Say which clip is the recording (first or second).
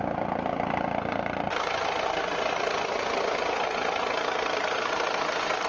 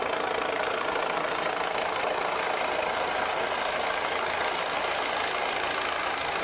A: second